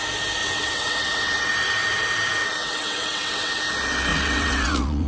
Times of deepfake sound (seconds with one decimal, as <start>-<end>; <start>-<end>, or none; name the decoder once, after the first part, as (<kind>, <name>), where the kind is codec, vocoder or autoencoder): 0.4-1.5 (vocoder, WaveNeXt); 2.4-3.6; 4.1-5.1